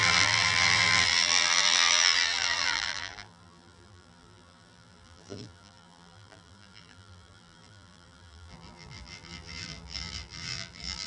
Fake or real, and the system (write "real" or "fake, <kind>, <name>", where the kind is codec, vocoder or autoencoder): fake, vocoder, BigVGAN v2